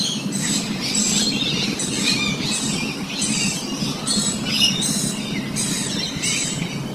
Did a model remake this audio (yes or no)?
yes